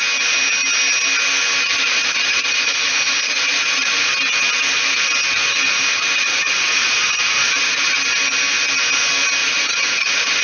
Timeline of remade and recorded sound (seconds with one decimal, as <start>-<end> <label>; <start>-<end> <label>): 0.0-1.7 recorded; 1.7-4.1 remade; 4.1-5.9 recorded; 5.9-8.0 remade; 8.0-9.4 recorded; 9.4-10.4 remade